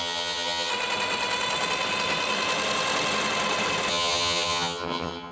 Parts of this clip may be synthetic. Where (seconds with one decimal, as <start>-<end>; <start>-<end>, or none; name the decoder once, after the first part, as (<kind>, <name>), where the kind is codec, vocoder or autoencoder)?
0.0-0.7 (vocoder, HiFi-GAN); 3.9-5.3